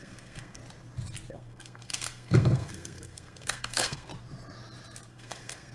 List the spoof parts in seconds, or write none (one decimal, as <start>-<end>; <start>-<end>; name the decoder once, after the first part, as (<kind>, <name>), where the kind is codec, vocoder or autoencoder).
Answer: 0.0-0.6 (codec, SNAC); 1.3-4.1; 5.1-5.7